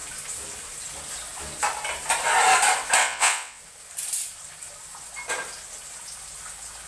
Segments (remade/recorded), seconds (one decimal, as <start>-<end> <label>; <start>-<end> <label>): 0.0-3.0 recorded; 3.0-3.6 remade; 3.6-6.9 recorded